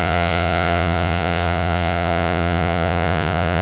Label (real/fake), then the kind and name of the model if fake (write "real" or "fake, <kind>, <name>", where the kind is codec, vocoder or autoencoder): fake, vocoder, Vocos